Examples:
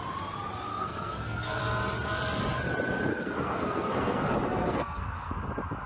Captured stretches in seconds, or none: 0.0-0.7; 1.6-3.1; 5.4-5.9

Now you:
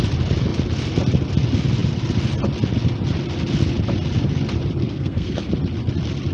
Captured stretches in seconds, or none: 0.0-4.8; 5.5-6.3

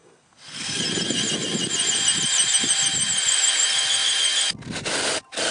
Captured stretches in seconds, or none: 0.8-5.5